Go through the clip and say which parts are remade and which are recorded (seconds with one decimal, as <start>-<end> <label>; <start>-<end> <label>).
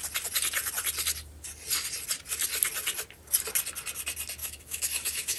0.0-4.4 recorded; 4.4-5.4 remade